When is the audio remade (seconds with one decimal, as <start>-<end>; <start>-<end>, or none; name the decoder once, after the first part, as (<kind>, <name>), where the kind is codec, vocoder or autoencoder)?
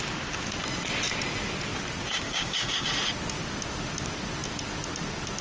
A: 2.1-2.9 (codec, DAC)